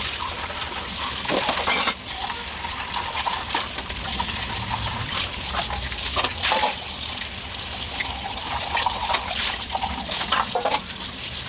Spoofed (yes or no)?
yes